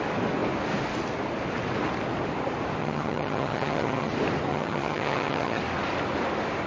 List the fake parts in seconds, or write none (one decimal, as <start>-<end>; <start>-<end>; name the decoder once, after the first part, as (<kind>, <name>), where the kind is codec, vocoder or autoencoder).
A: 2.8-4.1 (vocoder, HiFi-GAN); 4.5-5.6